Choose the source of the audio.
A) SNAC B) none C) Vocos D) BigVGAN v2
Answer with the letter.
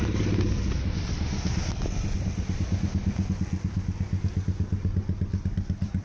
B